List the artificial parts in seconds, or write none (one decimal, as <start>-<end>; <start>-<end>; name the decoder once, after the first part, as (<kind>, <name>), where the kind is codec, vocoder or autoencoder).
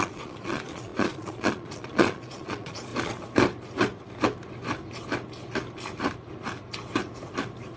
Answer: 0.0-2.9 (vocoder, Vocos)